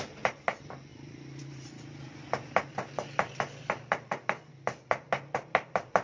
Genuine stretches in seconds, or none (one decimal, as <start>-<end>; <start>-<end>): 0.0-6.0